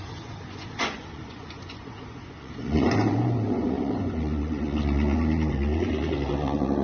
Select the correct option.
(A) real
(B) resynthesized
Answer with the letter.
B